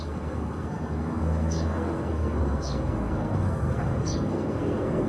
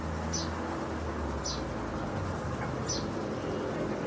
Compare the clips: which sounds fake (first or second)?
first